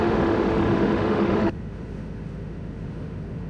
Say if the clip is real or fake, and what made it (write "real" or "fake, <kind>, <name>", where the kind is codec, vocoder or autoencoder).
fake, autoencoder, DAC-VAE